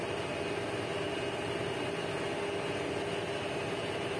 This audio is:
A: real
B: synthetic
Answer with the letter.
A